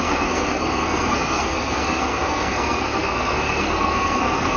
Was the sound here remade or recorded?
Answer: remade